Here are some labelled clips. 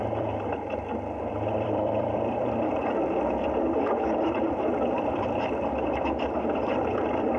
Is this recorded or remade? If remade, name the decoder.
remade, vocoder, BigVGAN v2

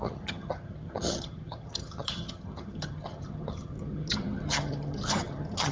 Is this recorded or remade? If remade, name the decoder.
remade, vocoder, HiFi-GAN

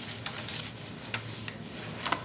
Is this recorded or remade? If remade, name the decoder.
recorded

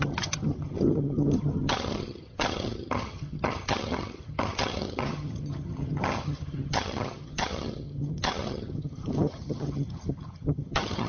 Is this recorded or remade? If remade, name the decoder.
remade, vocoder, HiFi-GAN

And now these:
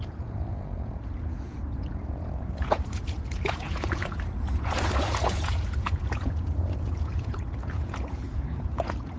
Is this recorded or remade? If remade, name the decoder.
remade, vocoder, Vocos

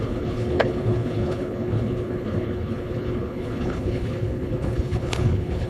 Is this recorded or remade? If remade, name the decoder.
remade, codec, HILCodec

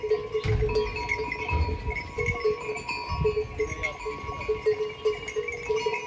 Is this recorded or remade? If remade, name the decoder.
recorded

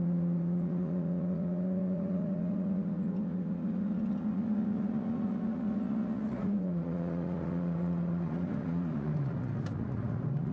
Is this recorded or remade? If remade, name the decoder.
remade, vocoder, Vocos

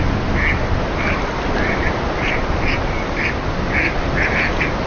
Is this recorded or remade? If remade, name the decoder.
recorded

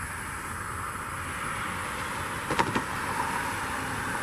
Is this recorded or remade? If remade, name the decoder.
recorded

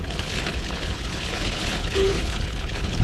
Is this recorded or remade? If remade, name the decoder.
remade, codec, HILCodec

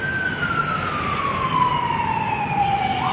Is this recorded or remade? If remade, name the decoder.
recorded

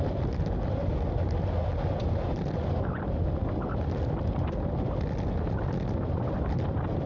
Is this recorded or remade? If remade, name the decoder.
recorded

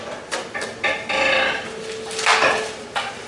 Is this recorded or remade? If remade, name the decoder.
recorded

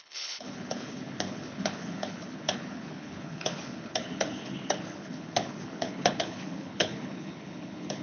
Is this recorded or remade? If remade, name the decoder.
remade, codec, HILCodec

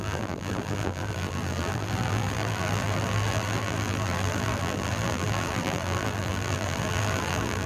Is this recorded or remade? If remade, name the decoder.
remade, vocoder, BigVGAN v2